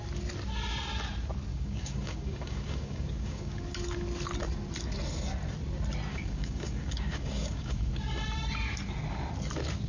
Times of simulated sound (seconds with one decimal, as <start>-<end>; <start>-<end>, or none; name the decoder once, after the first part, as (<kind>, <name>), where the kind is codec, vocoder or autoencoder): 1.5-3.6 (codec, DAC); 6.1-7.9